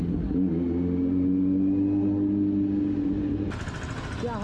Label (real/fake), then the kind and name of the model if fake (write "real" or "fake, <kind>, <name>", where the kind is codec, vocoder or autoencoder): real